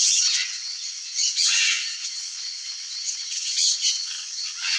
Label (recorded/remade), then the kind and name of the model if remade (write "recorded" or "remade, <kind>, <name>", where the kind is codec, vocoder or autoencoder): remade, vocoder, WaveNeXt